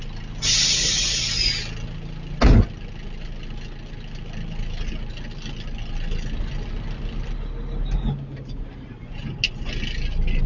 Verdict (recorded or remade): recorded